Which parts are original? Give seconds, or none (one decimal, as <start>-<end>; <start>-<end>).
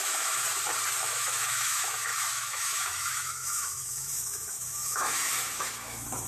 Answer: 0.4-1.0